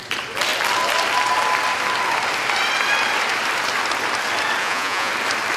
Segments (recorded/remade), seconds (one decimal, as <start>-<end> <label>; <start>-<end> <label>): 0.0-4.6 recorded; 4.6-5.1 remade; 5.1-5.6 recorded